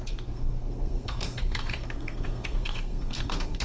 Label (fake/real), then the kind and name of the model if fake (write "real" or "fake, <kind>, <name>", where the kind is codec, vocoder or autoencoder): fake, codec, SNAC